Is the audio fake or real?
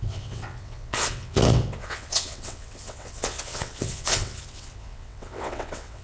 fake